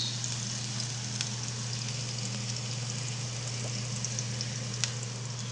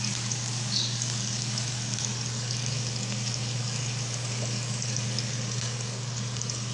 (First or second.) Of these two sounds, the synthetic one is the second